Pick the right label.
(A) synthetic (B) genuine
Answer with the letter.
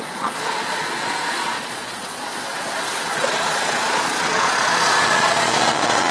A